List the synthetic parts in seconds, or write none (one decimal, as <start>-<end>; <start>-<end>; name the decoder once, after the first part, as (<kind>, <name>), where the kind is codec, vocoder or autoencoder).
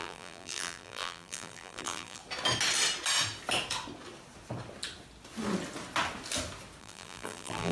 0.0-2.2 (vocoder, BigVGAN v2); 6.8-7.7